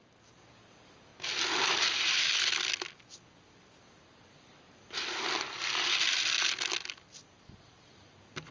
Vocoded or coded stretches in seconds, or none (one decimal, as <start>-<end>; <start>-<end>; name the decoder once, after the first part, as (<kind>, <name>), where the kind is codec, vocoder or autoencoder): none